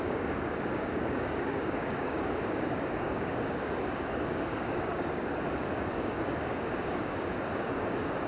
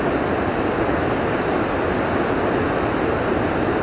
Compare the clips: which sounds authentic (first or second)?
second